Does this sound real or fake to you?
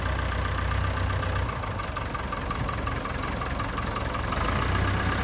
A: real